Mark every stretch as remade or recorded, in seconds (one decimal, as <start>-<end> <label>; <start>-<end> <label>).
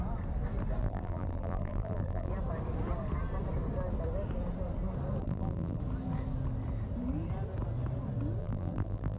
0.0-0.8 recorded; 0.8-2.3 remade; 2.3-5.2 recorded; 5.2-5.8 remade; 5.8-8.4 recorded; 8.4-9.2 remade